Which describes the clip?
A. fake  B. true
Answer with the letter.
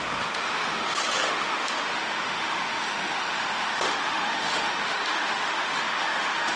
A